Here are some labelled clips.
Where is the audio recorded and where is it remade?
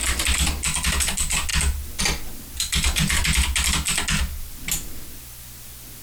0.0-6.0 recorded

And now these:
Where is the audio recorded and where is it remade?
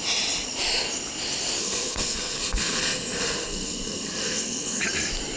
0.0-1.6 recorded; 1.6-4.8 remade; 4.8-5.4 recorded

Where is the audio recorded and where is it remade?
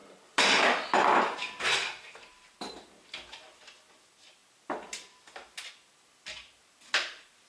0.0-7.5 recorded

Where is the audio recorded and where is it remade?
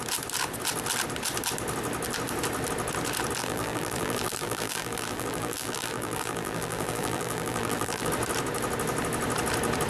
0.0-3.4 recorded; 3.4-8.1 remade; 8.1-9.9 recorded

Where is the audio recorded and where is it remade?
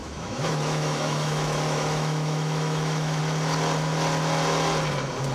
0.0-3.2 remade; 3.2-5.3 recorded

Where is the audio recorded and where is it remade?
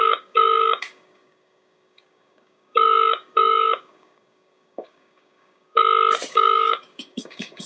0.0-5.8 remade; 5.8-6.3 recorded; 6.3-7.7 remade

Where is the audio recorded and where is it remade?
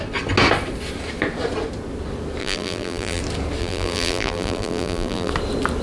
0.0-2.4 recorded; 2.4-3.2 remade; 3.2-3.6 recorded; 3.6-5.3 remade; 5.3-5.8 recorded